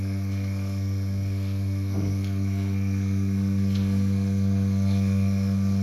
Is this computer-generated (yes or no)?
yes